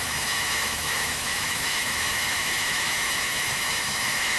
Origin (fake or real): fake